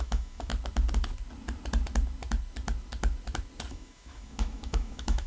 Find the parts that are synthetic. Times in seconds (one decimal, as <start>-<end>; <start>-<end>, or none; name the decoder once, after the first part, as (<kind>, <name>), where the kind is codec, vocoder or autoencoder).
0.0-0.5 (autoencoder, DAC-VAE); 3.7-5.3